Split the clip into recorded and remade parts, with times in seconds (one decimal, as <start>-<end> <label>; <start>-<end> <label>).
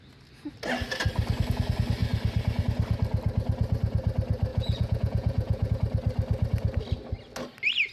0.0-4.5 recorded; 4.5-5.7 remade; 5.7-7.9 recorded